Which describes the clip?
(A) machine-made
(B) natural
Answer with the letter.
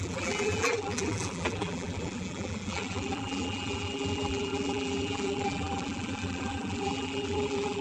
A